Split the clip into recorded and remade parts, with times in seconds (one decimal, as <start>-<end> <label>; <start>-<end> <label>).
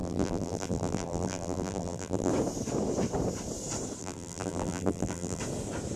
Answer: 0.0-2.3 remade; 2.3-4.0 recorded; 4.0-5.4 remade; 5.4-6.0 recorded